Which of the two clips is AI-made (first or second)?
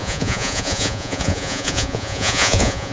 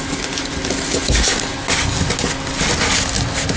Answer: first